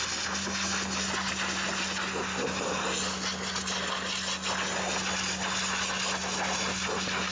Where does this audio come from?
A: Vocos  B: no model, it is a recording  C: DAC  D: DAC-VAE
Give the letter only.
B